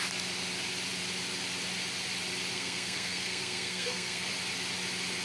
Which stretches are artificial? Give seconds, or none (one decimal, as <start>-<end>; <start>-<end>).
2.5-4.3